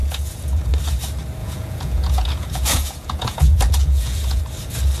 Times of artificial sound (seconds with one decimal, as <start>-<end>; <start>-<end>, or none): 0.0-0.7; 1.4-4.4